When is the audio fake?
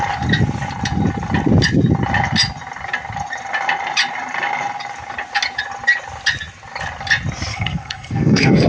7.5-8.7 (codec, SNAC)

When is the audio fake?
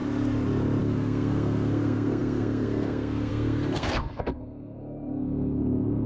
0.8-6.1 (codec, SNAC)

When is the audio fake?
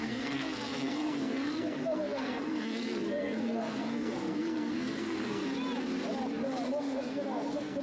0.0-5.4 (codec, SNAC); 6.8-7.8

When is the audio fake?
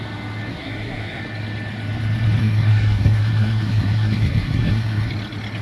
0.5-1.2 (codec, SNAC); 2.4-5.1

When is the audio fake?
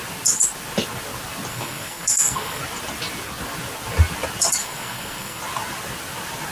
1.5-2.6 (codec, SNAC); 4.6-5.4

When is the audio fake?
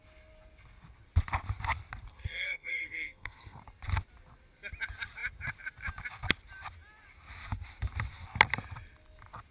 2.1-3.6 (codec, SNAC)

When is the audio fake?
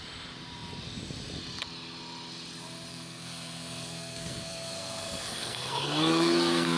2.9-6.8 (codec, SNAC)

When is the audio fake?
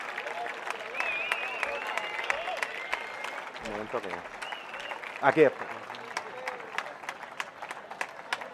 none